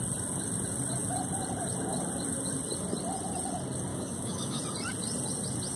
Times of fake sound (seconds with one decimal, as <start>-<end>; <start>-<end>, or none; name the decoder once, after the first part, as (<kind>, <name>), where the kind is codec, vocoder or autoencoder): 3.9-4.6 (autoencoder, DAC-VAE)